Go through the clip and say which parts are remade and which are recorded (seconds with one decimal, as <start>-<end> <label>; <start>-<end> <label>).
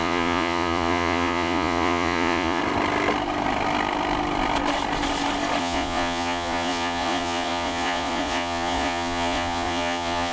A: 0.0-2.6 remade; 2.6-5.6 recorded; 5.6-10.3 remade